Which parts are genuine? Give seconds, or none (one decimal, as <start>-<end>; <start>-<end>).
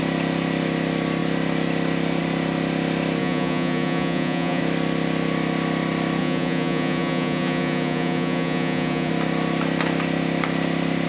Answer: 0.0-3.2; 4.6-6.2; 9.1-11.1